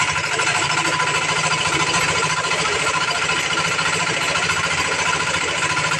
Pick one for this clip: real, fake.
fake